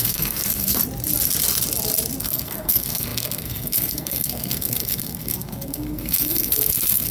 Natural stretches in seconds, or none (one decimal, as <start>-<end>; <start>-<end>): 0.8-2.2